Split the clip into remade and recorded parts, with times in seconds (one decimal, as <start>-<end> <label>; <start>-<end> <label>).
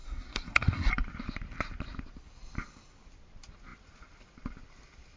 0.0-0.9 remade; 0.9-5.2 recorded